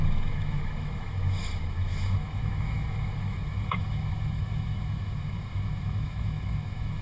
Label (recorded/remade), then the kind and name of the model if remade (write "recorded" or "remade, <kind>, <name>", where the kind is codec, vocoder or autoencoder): remade, autoencoder, DAC-VAE